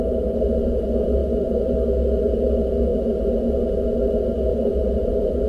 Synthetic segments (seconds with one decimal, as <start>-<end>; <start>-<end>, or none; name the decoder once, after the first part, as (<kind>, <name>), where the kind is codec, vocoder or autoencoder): 4.7-5.5 (vocoder, Vocos)

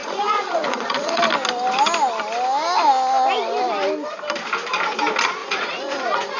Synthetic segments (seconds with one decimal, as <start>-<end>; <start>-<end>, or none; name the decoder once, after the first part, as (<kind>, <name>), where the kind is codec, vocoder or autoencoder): 0.0-1.2 (vocoder, Vocos); 5.4-6.4

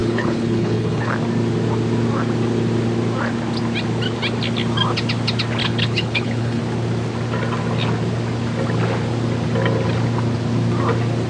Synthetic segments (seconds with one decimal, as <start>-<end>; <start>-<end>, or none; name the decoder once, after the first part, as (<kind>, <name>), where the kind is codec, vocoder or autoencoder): 0.0-1.1 (codec, HILCodec); 5.6-6.6

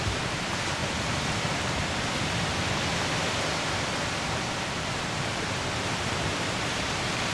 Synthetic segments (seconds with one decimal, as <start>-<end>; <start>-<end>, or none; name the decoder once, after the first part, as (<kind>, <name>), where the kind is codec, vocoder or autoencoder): 0.0-0.8 (vocoder, BigVGAN v2); 4.5-7.3

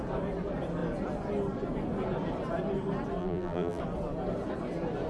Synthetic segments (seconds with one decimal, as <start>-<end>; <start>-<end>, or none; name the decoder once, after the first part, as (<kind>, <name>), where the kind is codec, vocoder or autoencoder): 3.2-3.8 (vocoder, BigVGAN v2)